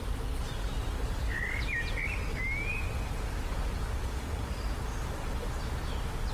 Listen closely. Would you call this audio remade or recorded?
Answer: recorded